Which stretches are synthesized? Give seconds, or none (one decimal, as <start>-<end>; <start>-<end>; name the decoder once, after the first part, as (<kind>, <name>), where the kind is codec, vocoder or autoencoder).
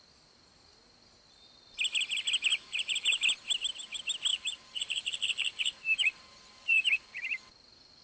2.5-3.2 (vocoder, BigVGAN v2); 4.3-7.4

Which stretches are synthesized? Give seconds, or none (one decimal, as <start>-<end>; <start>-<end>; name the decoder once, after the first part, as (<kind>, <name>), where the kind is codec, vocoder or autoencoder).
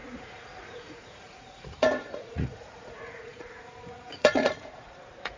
0.0-5.4 (vocoder, Vocos)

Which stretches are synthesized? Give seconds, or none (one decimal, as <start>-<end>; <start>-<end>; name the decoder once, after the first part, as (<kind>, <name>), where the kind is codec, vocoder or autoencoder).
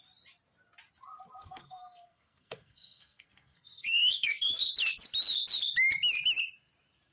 1.4-4.7 (codec, SNAC)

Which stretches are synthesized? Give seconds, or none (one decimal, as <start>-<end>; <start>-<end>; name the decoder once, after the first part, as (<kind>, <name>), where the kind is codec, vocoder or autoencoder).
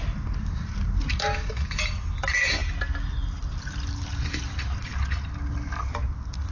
1.1-1.8 (autoencoder, DAC-VAE)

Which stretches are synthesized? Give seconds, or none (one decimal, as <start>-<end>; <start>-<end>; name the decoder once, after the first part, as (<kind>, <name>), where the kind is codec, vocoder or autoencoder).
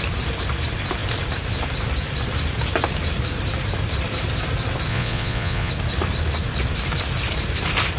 4.9-5.7 (vocoder, Vocos)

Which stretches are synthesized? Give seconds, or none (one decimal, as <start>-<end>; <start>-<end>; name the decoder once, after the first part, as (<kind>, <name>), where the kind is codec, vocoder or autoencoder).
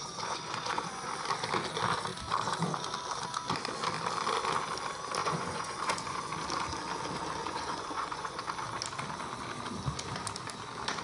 0.0-1.1 (vocoder, Vocos); 5.2-6.3; 7.4-8.4